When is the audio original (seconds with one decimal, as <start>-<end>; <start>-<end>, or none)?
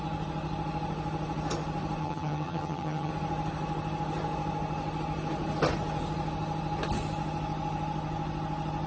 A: 0.0-2.0; 3.1-8.9